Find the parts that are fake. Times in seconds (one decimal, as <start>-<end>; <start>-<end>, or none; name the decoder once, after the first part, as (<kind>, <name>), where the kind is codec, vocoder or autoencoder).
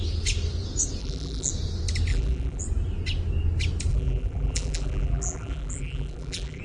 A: 1.0-1.5 (vocoder, BigVGAN v2); 2.1-2.6; 3.9-6.6